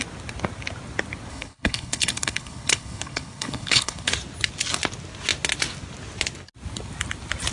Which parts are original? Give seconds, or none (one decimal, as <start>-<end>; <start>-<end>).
0.0-1.3; 4.1-7.5